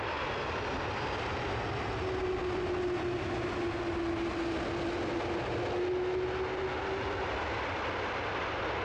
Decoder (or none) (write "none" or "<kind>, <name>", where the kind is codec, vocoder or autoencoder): none